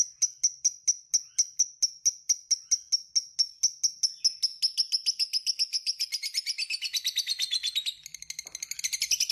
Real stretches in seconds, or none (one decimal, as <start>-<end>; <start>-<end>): 0.0-9.3